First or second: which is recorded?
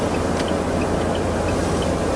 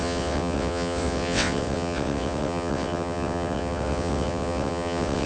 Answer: first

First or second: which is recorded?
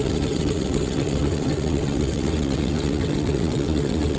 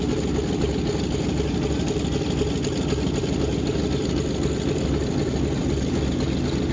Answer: second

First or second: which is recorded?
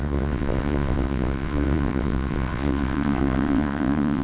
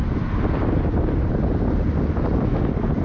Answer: second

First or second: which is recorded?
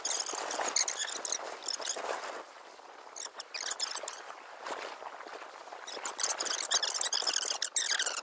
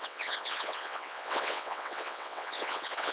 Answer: first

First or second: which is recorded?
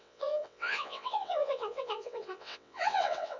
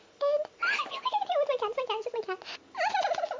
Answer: second